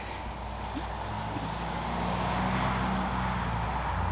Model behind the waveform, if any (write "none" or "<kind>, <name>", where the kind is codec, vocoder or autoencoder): none